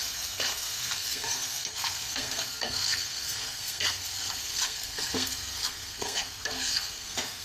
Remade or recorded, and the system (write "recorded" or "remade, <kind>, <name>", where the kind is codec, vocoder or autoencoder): remade, codec, SNAC